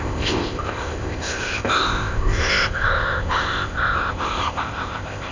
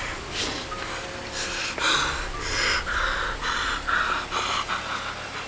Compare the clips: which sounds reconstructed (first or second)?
first